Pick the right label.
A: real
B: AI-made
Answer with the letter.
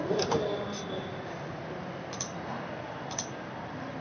A